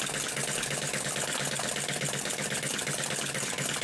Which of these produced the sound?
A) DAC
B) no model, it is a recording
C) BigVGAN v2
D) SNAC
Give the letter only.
B